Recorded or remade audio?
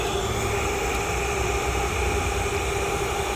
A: recorded